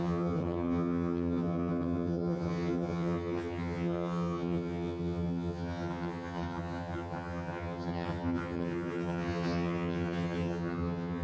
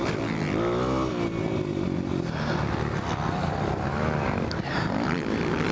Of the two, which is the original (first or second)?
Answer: second